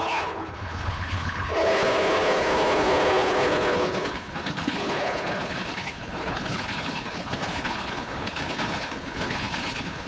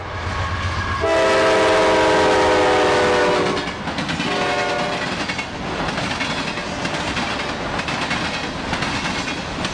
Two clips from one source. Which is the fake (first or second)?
first